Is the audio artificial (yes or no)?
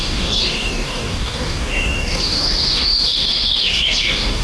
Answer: yes